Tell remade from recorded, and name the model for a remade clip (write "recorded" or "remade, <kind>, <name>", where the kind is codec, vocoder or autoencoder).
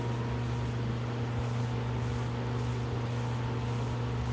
recorded